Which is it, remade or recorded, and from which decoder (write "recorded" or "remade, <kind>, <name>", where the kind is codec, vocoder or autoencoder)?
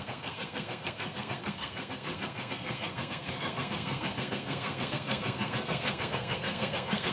remade, codec, SNAC